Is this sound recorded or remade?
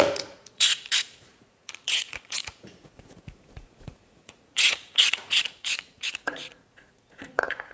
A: remade